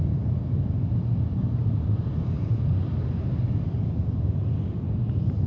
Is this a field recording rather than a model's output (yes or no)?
yes